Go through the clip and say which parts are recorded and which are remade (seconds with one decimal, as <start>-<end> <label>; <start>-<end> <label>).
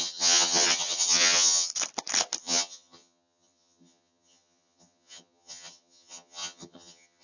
0.0-1.7 remade; 1.7-2.4 recorded; 2.4-7.2 remade